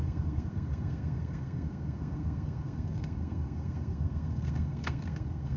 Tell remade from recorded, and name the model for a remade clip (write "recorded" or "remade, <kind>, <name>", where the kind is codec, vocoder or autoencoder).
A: remade, codec, SNAC